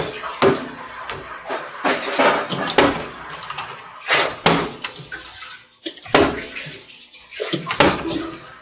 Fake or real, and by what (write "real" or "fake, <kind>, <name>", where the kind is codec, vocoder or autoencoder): real